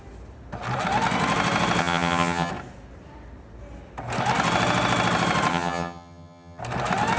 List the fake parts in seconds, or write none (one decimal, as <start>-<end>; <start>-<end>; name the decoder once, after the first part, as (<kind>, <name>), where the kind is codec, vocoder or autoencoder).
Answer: 1.8-2.5 (vocoder, HiFi-GAN); 5.5-6.6